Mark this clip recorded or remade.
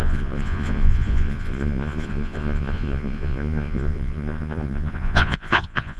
remade